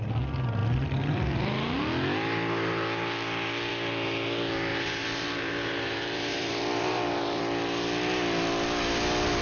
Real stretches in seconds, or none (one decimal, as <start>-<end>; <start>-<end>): 0.0-4.7; 7.4-9.4